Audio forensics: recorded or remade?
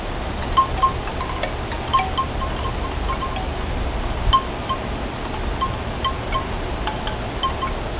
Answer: recorded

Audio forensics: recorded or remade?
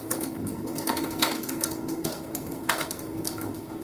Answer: remade